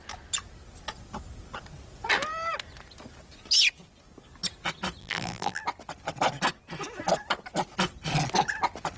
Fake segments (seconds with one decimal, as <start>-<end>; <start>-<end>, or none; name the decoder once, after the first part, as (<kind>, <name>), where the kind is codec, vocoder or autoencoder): 5.0-5.6 (vocoder, BigVGAN v2)